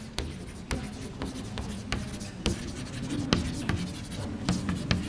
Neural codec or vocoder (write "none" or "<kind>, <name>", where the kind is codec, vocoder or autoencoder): none